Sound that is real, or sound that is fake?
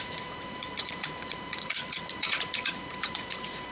fake